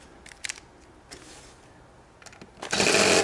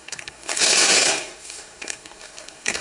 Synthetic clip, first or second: second